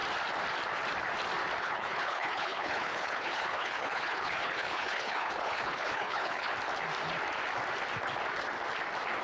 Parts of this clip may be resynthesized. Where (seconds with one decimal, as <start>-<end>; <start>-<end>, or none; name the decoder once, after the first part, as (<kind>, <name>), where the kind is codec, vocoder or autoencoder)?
1.6-6.5 (codec, HILCodec)